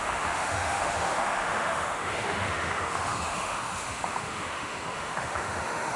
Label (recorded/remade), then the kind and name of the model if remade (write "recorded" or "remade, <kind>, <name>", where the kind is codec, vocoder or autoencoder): remade, autoencoder, DAC-VAE